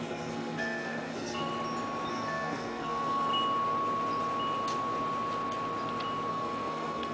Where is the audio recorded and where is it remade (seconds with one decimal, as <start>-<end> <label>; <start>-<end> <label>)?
0.0-1.5 remade; 1.5-2.1 recorded; 2.1-3.3 remade; 3.3-6.3 recorded; 6.3-7.1 remade